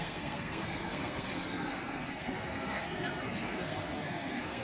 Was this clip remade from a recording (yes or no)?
yes